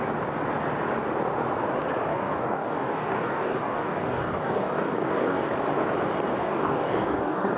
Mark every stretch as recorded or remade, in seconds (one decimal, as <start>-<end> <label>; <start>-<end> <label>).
0.0-2.1 recorded; 2.1-5.5 remade; 5.5-6.3 recorded; 6.3-7.6 remade